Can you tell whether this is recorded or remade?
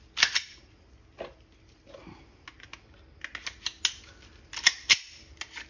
recorded